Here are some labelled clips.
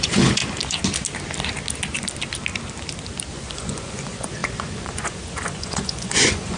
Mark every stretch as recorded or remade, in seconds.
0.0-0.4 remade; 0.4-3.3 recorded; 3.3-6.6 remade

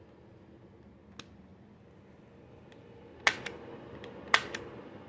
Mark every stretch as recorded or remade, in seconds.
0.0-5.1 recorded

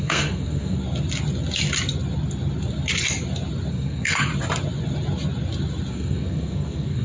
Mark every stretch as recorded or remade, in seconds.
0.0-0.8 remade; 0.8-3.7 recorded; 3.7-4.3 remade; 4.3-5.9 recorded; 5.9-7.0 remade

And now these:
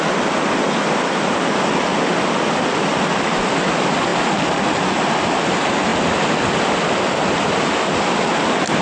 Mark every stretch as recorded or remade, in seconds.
0.0-8.8 recorded

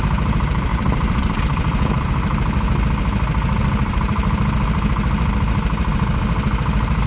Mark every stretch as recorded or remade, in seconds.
0.0-0.7 recorded; 0.7-1.4 remade; 1.4-7.1 recorded

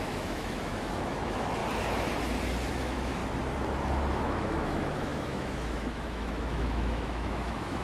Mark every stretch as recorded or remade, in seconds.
0.0-1.6 remade; 1.6-2.7 recorded; 2.7-3.2 remade; 3.2-4.2 recorded; 4.2-7.8 remade

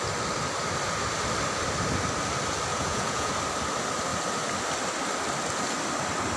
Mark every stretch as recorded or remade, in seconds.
0.0-2.7 recorded; 2.7-3.3 remade; 3.3-6.4 recorded

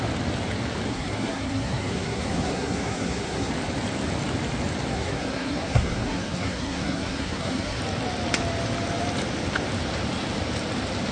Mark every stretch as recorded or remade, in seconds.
0.0-0.9 recorded; 0.9-3.5 remade; 3.5-4.9 recorded; 4.9-7.8 remade; 7.8-11.1 recorded